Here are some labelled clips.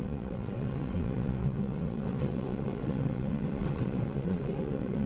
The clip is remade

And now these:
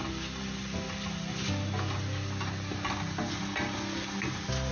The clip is recorded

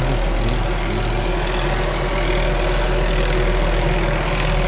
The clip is recorded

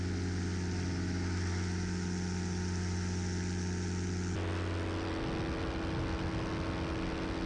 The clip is recorded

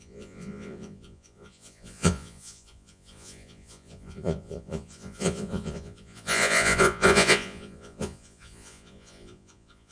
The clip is remade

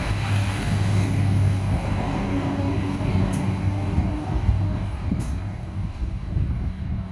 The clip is remade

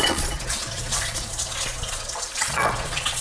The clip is remade